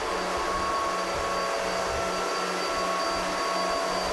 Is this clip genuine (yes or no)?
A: yes